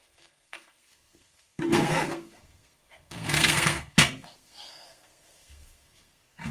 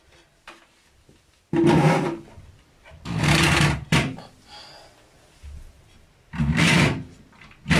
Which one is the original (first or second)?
second